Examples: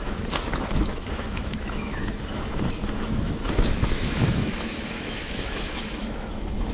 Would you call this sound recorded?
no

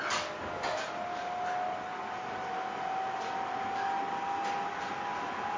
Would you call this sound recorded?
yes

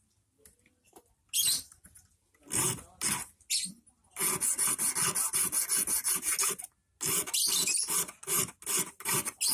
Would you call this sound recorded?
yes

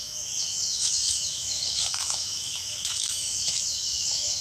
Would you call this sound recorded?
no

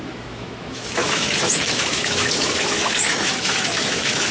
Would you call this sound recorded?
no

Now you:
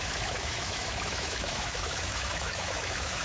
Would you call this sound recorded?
no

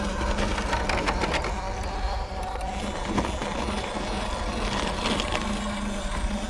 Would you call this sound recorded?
yes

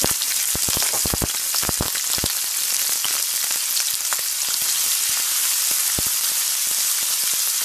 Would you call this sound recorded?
yes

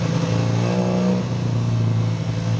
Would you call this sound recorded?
yes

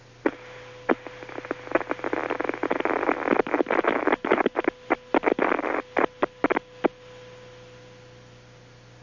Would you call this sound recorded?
yes